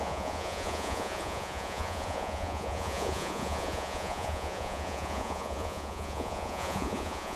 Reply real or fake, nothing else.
fake